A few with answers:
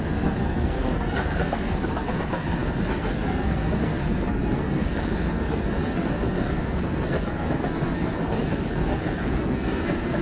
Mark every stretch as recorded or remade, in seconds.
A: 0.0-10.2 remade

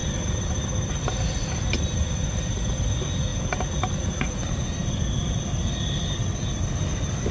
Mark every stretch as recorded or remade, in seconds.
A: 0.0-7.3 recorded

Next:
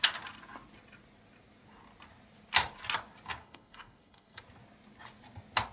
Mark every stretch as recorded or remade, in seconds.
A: 0.0-3.4 recorded; 3.4-4.4 remade; 4.4-5.7 recorded

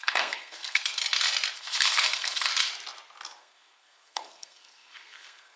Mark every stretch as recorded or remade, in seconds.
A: 0.0-1.0 remade; 1.0-1.6 recorded; 1.6-2.5 remade; 2.5-3.4 recorded; 3.4-5.6 remade

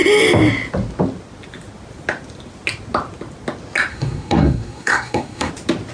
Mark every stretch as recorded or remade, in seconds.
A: 0.0-3.9 recorded; 3.9-5.5 remade; 5.5-5.9 recorded

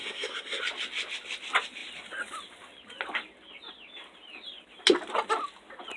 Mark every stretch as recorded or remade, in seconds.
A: 0.0-0.6 remade; 0.6-6.0 recorded